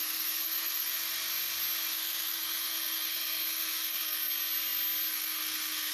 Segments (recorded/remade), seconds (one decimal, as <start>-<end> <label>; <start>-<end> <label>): 0.0-1.0 remade; 1.0-1.9 recorded; 1.9-4.3 remade; 4.3-5.1 recorded; 5.1-5.9 remade